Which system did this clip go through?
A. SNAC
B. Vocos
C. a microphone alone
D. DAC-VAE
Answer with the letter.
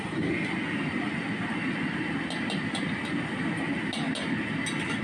C